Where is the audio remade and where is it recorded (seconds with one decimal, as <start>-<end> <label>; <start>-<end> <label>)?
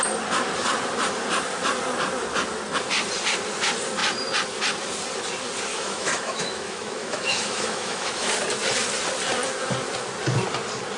0.0-5.7 recorded; 5.7-8.3 remade; 8.3-11.0 recorded